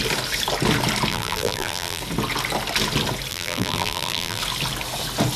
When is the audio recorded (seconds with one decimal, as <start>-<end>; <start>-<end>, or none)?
0.0-1.1; 2.0-3.3; 4.4-5.4